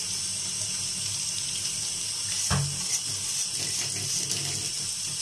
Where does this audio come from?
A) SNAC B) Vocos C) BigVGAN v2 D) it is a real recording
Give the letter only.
D